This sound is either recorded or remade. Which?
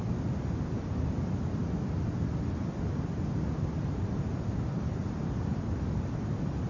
remade